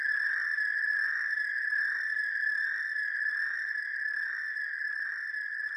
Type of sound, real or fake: real